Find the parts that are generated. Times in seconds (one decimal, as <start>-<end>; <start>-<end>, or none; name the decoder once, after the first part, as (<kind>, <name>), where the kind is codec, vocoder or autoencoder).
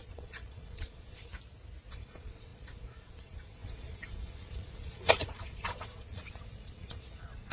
0.0-1.3 (vocoder, Vocos); 1.9-7.5